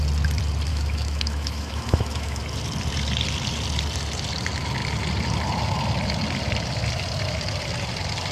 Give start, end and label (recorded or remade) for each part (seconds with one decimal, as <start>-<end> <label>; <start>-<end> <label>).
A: 0.0-0.7 recorded; 0.7-2.4 remade; 2.4-8.3 recorded